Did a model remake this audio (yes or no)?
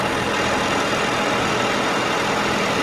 no